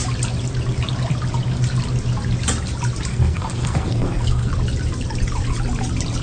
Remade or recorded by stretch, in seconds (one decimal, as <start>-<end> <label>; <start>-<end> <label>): 0.0-3.1 recorded; 3.1-4.5 remade; 4.5-6.2 recorded